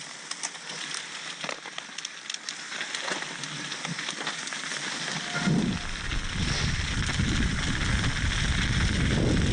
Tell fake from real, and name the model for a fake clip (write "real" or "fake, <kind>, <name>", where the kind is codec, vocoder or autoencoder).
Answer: real